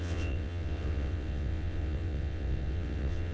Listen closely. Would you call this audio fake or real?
fake